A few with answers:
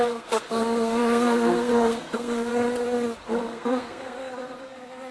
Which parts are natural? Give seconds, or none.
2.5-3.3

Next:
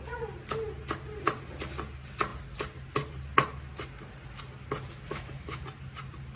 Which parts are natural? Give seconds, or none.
0.0-5.1; 5.6-6.4

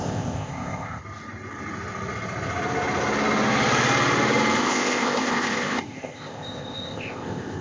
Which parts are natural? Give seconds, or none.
1.0-4.6